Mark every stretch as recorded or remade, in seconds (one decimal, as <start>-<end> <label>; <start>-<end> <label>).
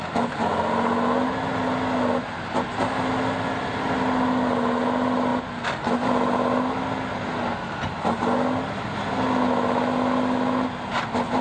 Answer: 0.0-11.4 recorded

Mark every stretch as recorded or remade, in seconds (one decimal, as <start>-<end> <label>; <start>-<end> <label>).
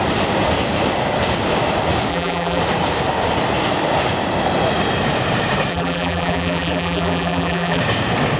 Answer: 0.0-2.1 recorded; 2.1-2.6 remade; 2.6-5.7 recorded; 5.7-7.8 remade; 7.8-8.4 recorded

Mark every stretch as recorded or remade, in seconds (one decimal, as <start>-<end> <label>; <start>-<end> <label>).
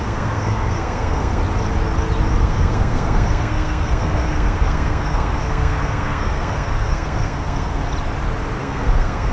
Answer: 0.0-1.4 remade; 1.4-2.4 recorded; 2.4-7.8 remade; 7.8-8.6 recorded; 8.6-9.3 remade